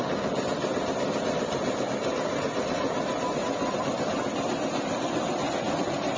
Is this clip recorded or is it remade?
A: recorded